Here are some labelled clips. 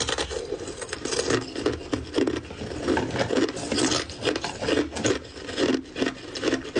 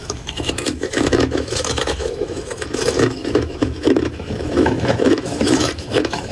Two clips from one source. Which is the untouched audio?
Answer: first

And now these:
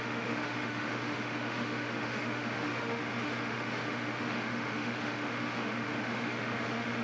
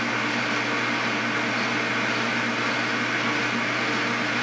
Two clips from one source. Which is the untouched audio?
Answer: second